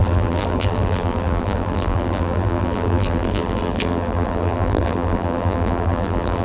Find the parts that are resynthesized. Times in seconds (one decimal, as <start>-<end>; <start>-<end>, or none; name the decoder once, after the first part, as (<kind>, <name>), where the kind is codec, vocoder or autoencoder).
0.0-6.4 (vocoder, BigVGAN v2)